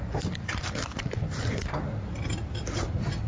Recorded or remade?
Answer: remade